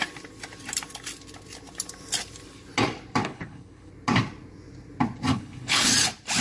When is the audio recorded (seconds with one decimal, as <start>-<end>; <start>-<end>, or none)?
0.0-3.2; 3.9-5.3; 5.9-6.4